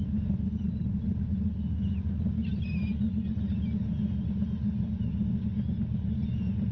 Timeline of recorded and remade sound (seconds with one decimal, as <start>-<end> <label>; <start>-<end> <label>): 0.0-6.7 recorded